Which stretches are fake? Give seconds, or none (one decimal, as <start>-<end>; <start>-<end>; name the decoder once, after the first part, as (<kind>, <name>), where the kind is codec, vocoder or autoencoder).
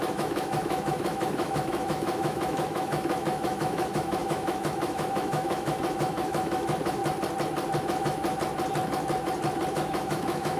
0.0-7.0 (autoencoder, DAC-VAE); 7.8-8.2; 9.7-10.6